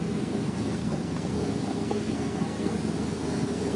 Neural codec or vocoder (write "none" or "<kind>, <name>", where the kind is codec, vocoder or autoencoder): codec, SNAC